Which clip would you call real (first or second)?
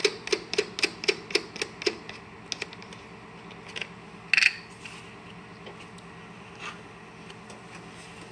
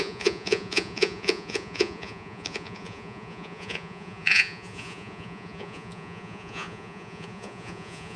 first